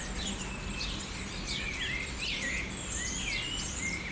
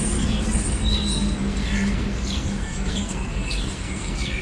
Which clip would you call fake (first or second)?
second